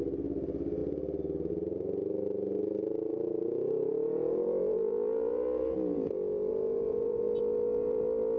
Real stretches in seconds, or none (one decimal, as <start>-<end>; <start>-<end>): 0.0-3.1; 8.0-8.4